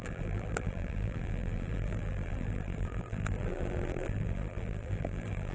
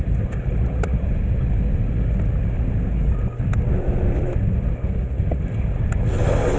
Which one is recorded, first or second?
second